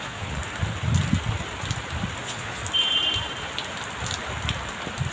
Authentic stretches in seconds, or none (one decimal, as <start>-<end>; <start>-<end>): 0.4-2.2; 2.6-5.1